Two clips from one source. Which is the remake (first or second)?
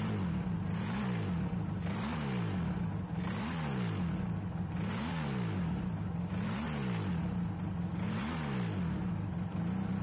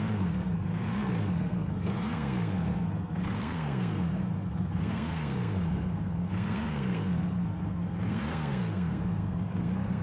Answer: second